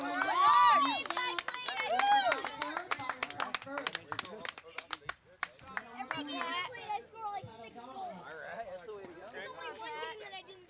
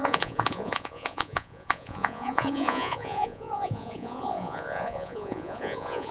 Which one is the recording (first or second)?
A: first